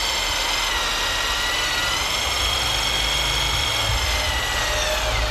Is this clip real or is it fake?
real